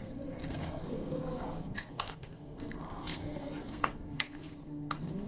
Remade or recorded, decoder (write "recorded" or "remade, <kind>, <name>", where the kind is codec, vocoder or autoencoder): remade, codec, SNAC